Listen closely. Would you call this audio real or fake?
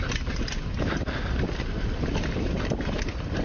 real